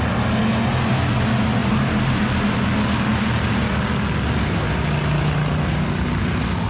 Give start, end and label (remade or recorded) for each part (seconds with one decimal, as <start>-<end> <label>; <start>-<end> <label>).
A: 0.0-1.6 recorded; 1.6-2.2 remade; 2.2-6.7 recorded